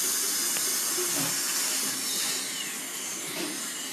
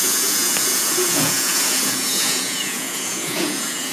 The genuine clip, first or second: first